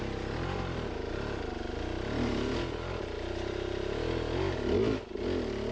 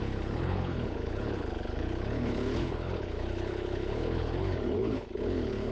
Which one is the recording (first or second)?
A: first